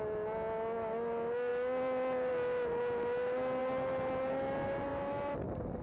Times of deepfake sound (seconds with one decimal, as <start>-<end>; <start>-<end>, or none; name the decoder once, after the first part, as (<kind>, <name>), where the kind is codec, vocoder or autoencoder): none